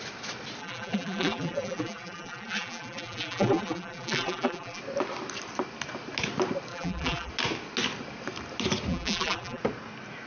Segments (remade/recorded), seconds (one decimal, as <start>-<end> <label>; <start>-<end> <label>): 0.0-0.6 recorded; 0.6-4.8 remade; 4.8-6.7 recorded; 6.7-7.3 remade; 7.3-8.9 recorded; 8.9-9.6 remade; 9.6-10.3 recorded